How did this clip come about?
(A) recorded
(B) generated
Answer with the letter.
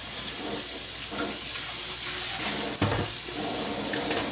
A